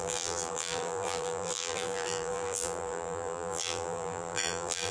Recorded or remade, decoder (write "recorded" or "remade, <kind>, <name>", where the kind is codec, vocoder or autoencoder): remade, vocoder, BigVGAN v2